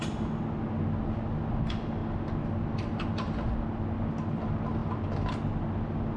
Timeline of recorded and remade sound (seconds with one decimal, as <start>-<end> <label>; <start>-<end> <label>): 0.0-6.2 recorded